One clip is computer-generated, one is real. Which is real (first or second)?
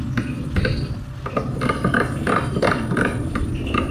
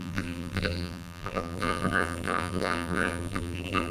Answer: first